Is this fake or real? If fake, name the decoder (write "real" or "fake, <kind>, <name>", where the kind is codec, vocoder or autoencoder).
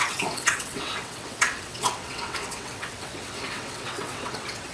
fake, vocoder, WaveNeXt